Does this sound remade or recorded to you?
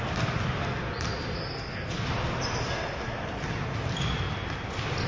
recorded